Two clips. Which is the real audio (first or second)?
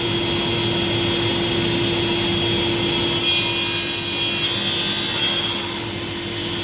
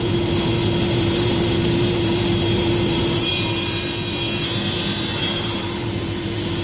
first